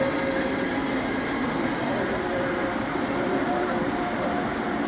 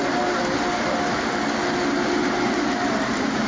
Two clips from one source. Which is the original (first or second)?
second